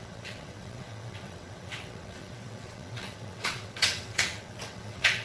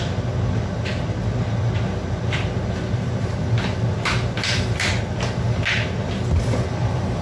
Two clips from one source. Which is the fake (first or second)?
first